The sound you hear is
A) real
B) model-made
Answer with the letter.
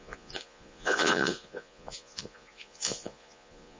B